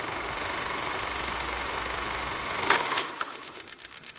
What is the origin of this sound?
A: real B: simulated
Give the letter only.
B